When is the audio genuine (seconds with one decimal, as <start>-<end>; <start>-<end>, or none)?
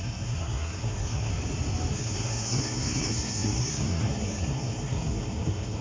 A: 1.3-1.9